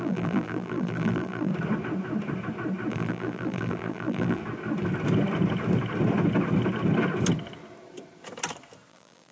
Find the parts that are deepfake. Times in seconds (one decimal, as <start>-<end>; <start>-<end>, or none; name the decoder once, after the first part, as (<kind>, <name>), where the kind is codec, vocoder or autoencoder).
0.0-1.5 (vocoder, BigVGAN v2); 2.9-4.4; 8.9-9.3